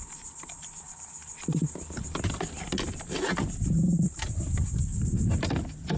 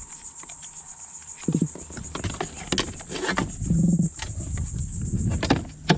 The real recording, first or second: second